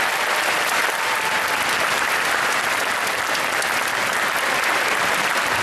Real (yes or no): yes